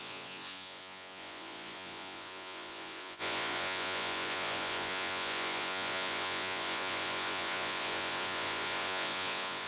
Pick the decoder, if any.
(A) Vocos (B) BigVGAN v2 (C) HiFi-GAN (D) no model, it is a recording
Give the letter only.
A